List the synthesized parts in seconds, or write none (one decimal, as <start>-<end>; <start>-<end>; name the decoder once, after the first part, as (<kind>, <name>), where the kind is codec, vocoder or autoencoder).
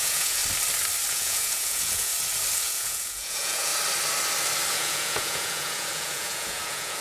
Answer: 0.0-0.4 (vocoder, Vocos); 1.1-2.1; 2.6-3.7; 4.7-7.0